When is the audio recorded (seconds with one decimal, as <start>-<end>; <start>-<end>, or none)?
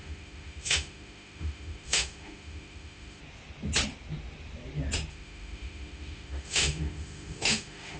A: 3.2-5.1